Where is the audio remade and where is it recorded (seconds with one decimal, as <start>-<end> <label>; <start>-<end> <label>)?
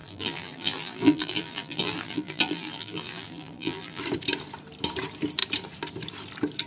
0.0-4.0 remade; 4.0-6.7 recorded